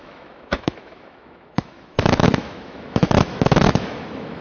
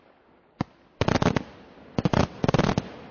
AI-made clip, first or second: first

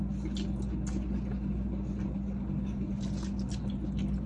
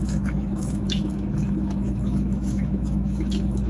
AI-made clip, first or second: second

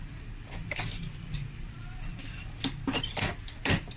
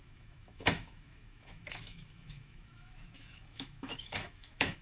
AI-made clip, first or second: second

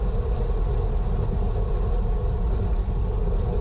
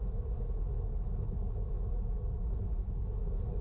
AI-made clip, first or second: second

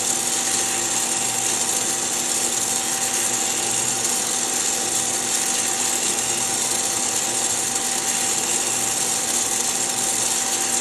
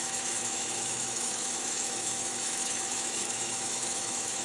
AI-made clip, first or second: second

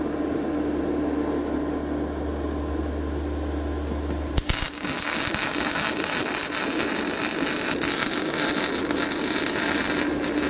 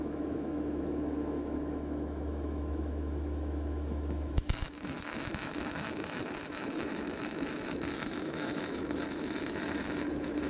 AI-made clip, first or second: second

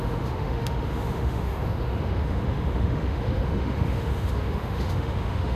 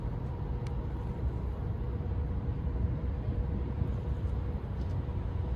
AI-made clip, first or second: first